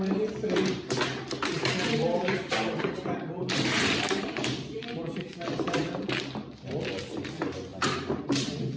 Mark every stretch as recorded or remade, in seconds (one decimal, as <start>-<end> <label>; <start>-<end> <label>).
0.0-0.6 recorded; 0.6-5.7 remade; 5.7-7.7 recorded; 7.7-8.2 remade; 8.2-8.8 recorded